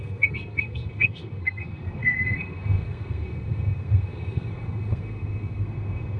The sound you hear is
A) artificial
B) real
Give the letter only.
A